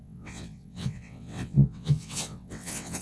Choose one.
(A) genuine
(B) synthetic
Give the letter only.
B